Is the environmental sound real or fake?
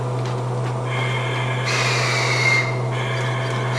real